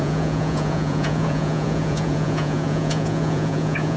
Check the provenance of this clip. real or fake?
fake